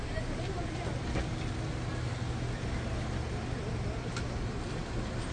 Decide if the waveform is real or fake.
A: real